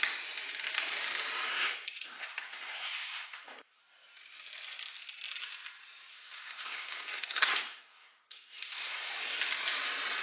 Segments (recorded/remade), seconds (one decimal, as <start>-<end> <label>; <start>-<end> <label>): 0.0-1.5 recorded; 1.5-3.8 remade; 3.8-6.1 recorded; 6.1-9.1 remade; 9.1-10.2 recorded